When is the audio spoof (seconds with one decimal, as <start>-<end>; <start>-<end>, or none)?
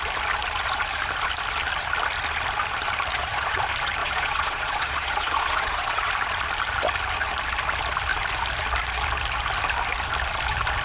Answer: 3.1-3.6; 4.0-6.1